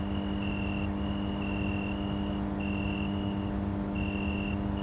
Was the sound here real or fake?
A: real